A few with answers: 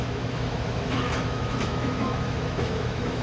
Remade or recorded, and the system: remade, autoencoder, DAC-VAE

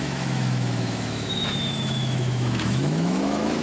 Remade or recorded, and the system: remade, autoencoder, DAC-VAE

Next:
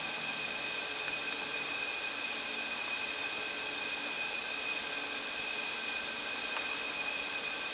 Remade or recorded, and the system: recorded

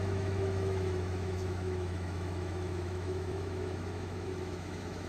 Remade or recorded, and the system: remade, autoencoder, DAC-VAE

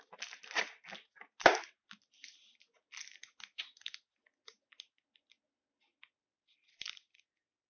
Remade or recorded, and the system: recorded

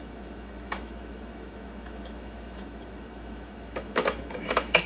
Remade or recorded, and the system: remade, autoencoder, DAC-VAE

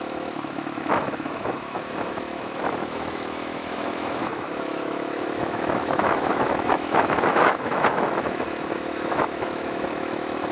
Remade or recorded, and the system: remade, autoencoder, DAC-VAE